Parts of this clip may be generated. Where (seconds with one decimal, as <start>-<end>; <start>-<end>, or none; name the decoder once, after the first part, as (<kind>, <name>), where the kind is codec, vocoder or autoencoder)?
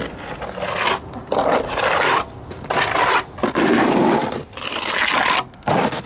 none